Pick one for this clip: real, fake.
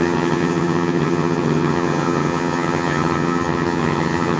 fake